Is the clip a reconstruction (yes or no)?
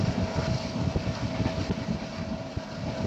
no